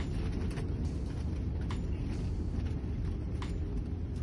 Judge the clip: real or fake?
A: real